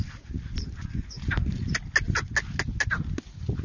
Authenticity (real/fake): real